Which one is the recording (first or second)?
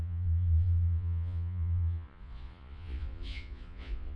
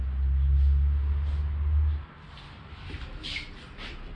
second